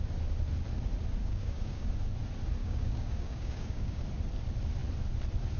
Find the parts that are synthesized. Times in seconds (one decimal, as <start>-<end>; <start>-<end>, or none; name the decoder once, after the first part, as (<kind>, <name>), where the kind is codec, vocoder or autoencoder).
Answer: 1.2-1.9 (codec, DAC); 2.6-4.0

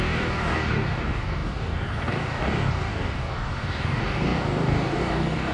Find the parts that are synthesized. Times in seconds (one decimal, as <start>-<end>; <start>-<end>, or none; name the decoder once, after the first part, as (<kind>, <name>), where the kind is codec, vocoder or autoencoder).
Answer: 0.0-5.5 (codec, DAC)

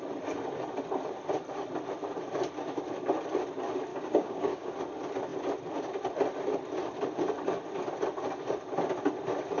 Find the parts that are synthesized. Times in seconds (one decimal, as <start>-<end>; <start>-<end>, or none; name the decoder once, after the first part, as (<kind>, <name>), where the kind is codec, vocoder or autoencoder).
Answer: 3.9-4.7 (codec, DAC)

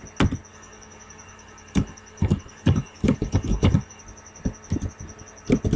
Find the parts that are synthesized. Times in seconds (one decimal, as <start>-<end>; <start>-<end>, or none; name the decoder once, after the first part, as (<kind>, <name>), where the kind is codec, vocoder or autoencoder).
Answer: 0.5-4.0 (codec, DAC)

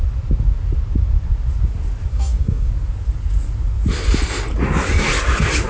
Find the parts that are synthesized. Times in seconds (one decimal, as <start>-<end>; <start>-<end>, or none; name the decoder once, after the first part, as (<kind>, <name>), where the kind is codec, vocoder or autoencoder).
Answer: 2.1-2.7 (codec, DAC)

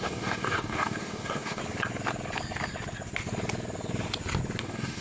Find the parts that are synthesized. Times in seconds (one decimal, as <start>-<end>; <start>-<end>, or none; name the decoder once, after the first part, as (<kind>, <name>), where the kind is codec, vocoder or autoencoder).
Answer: 0.0-1.6 (codec, DAC); 4.6-5.0